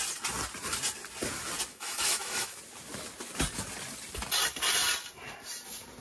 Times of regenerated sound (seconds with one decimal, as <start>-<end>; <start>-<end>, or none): 1.7-2.6